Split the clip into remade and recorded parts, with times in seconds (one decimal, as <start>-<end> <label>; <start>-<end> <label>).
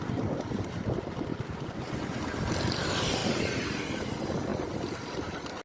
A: 0.0-1.3 recorded; 1.3-1.9 remade; 1.9-3.2 recorded; 3.2-3.8 remade; 3.8-5.6 recorded